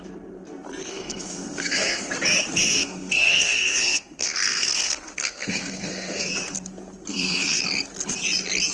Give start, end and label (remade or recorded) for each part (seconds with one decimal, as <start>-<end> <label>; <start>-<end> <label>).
0.0-0.8 recorded; 0.8-2.1 remade; 2.1-2.6 recorded; 2.6-6.3 remade; 6.3-7.1 recorded; 7.1-7.6 remade; 7.6-8.7 recorded

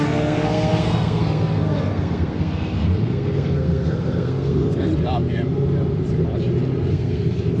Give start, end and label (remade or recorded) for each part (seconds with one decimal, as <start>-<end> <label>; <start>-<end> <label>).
0.0-4.9 remade; 4.9-6.9 recorded; 6.9-7.6 remade

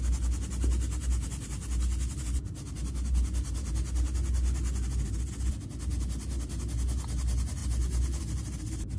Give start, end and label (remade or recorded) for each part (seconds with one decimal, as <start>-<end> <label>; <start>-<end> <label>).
0.0-9.0 recorded

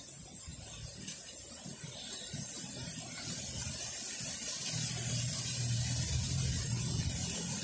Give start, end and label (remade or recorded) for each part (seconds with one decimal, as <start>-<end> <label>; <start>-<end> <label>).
0.0-7.6 recorded

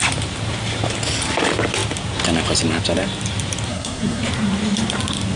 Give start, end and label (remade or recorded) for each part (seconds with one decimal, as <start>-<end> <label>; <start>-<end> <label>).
0.0-3.7 recorded; 3.7-4.2 remade; 4.2-5.4 recorded

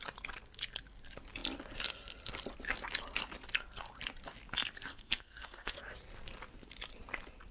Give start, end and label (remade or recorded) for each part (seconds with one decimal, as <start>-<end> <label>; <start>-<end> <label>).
0.0-4.6 recorded; 4.6-5.8 remade; 5.8-7.5 recorded

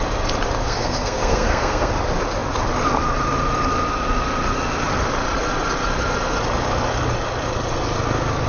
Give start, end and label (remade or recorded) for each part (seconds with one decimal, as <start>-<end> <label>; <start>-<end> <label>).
0.0-0.6 recorded; 0.6-1.9 remade; 1.9-8.5 recorded